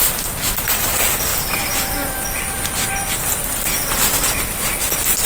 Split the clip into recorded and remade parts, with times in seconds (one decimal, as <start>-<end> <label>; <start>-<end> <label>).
0.0-5.3 recorded